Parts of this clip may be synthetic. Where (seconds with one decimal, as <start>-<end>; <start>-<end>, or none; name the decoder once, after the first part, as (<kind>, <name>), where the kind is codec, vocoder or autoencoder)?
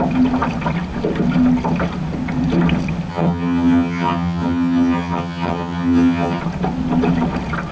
3.1-6.4 (vocoder, HiFi-GAN)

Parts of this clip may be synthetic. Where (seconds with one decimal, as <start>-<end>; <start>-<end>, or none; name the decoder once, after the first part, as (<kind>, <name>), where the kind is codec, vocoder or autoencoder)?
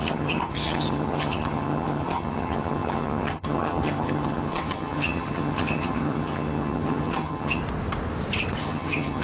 0.0-7.6 (vocoder, HiFi-GAN); 8.6-9.2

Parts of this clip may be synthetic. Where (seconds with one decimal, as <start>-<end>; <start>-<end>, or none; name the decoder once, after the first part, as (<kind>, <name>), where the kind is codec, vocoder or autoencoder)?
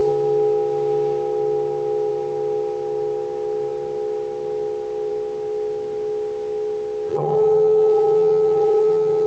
7.1-9.3 (vocoder, HiFi-GAN)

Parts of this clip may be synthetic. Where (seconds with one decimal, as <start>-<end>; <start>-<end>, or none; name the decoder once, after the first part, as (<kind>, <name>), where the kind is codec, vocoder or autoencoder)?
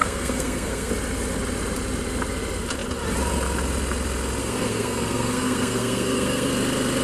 0.0-0.9 (codec, SNAC); 4.4-6.5